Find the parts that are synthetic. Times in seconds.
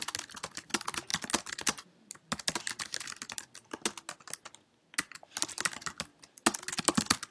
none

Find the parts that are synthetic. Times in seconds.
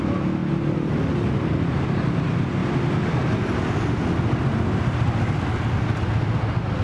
none